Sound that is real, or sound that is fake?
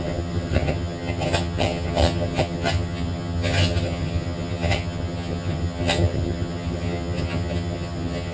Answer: fake